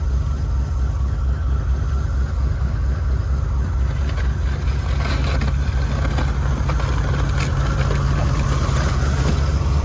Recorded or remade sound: recorded